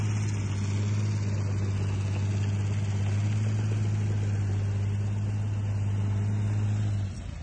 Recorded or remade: recorded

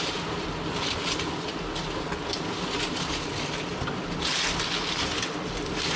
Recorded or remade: recorded